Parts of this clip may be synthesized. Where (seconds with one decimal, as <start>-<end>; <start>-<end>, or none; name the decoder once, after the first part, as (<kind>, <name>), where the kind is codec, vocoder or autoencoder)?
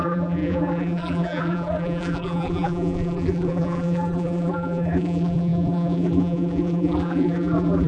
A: 0.0-7.9 (vocoder, BigVGAN v2)